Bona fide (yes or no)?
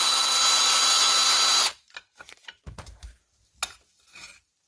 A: yes